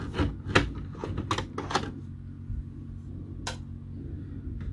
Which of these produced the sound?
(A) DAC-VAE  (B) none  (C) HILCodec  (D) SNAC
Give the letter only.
B